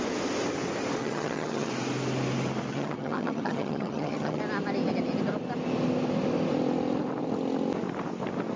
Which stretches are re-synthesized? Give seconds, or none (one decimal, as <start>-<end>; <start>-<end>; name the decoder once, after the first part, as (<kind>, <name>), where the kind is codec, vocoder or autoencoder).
1.0-1.7 (vocoder, HiFi-GAN); 2.7-4.4

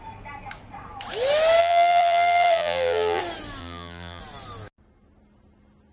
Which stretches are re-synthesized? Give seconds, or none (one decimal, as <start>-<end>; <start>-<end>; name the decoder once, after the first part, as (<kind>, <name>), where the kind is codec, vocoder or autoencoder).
1.6-3.2 (vocoder, BigVGAN v2); 3.6-4.2

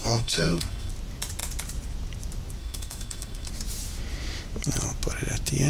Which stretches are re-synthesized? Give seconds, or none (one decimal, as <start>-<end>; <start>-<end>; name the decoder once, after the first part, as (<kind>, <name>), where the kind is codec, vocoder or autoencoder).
0.0-0.9 (codec, SNAC); 2.6-3.5

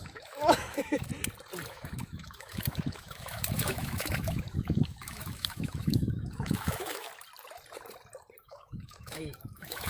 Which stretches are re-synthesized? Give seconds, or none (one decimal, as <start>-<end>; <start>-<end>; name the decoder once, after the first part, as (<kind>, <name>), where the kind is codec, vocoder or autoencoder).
0.0-1.1 (autoencoder, DAC-VAE); 1.7-7.1; 8.4-9.9